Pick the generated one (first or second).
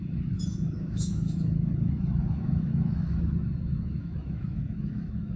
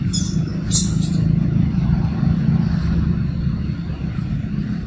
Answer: first